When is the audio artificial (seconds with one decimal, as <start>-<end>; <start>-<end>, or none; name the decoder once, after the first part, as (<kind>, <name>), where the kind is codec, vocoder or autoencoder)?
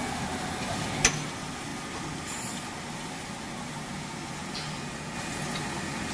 none